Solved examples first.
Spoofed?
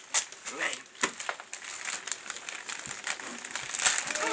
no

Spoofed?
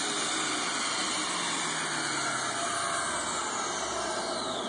no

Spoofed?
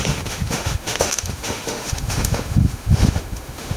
yes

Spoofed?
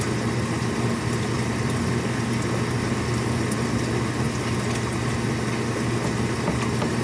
no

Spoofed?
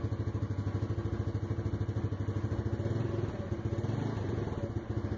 no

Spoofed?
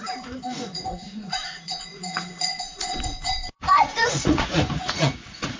yes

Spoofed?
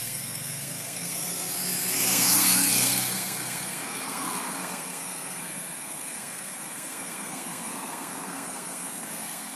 yes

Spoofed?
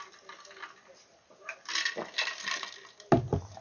no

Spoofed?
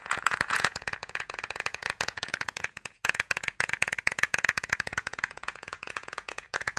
yes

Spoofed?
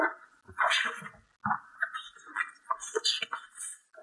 no